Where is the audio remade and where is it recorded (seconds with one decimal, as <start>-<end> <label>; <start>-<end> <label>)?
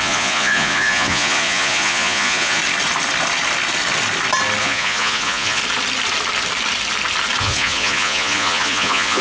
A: 0.0-2.6 remade; 2.6-4.6 recorded; 4.6-5.6 remade; 5.6-7.4 recorded; 7.4-9.2 remade